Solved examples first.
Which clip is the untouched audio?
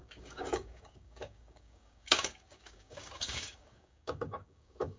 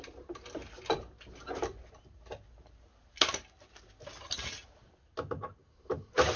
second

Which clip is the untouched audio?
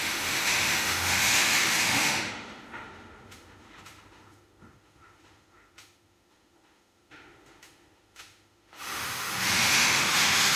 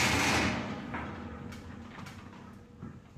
second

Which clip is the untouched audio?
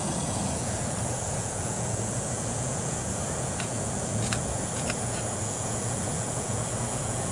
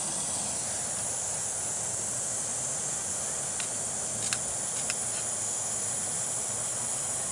second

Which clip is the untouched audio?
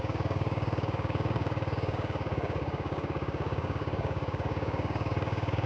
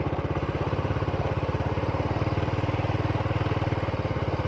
second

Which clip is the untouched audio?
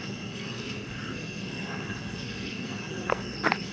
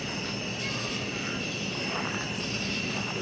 second